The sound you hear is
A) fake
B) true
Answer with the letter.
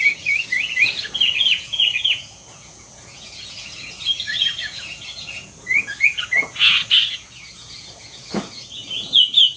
A